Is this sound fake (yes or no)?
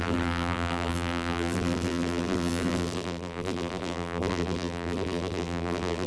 yes